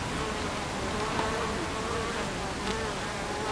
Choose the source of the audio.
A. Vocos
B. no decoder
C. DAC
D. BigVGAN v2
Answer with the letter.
B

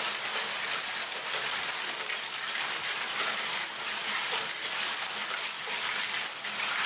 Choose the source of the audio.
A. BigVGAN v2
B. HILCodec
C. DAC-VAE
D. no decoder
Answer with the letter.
D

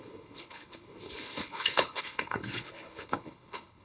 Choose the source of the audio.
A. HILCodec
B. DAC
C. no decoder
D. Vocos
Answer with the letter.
A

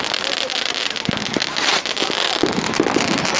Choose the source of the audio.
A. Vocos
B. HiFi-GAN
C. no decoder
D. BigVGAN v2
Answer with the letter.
D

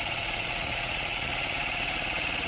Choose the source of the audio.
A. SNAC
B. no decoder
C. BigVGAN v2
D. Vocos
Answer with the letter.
D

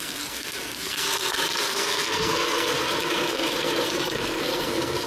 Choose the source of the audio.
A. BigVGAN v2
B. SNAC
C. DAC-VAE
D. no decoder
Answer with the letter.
B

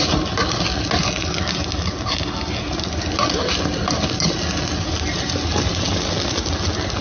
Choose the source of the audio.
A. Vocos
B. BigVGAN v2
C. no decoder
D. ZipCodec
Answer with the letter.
C